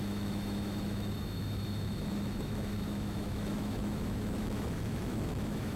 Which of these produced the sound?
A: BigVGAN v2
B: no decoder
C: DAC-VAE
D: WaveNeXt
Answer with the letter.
C